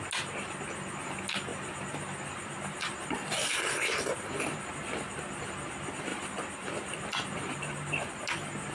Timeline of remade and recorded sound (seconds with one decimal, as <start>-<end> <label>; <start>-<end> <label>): 0.0-1.5 recorded; 1.5-5.2 remade; 5.2-6.1 recorded; 6.1-8.1 remade; 8.1-8.7 recorded